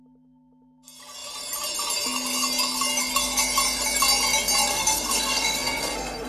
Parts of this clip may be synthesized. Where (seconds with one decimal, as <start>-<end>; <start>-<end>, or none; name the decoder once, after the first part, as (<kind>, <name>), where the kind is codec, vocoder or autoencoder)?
4.7-6.3 (codec, SNAC)